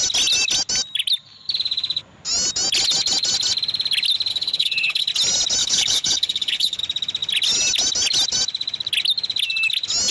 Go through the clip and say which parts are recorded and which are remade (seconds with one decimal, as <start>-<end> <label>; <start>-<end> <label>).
0.0-4.3 recorded; 4.3-5.1 remade; 5.1-5.6 recorded; 5.6-6.8 remade; 6.8-10.1 recorded